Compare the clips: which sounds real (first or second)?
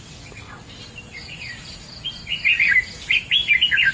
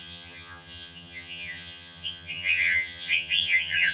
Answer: first